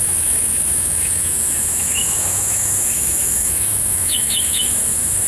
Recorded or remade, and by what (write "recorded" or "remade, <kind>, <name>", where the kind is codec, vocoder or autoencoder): remade, autoencoder, DAC-VAE